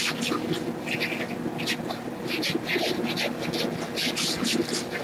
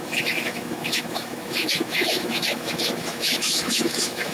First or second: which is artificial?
second